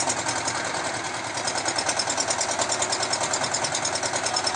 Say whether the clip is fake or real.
real